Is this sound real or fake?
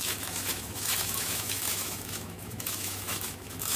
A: fake